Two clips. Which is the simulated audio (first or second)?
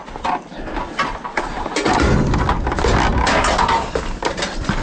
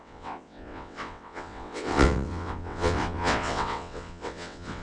second